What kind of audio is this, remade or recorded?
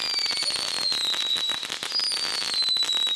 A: recorded